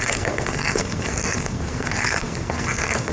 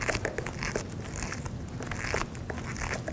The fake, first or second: first